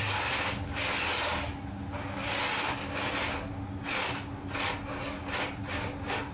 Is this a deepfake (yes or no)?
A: no